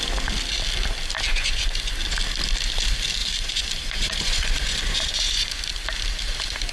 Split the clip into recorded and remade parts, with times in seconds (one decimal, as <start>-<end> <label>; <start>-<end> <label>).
0.0-1.3 recorded; 1.3-1.9 remade; 1.9-3.2 recorded; 3.2-5.6 remade; 5.6-6.7 recorded